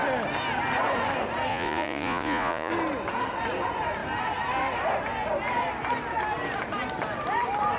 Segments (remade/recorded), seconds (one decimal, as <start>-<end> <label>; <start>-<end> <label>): 0.0-1.5 recorded; 1.5-2.7 remade; 2.7-7.8 recorded